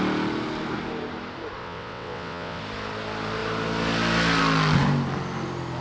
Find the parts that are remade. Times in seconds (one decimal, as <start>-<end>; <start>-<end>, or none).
1.6-2.6